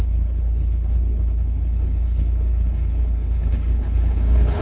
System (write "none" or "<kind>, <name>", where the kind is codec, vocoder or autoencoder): codec, HILCodec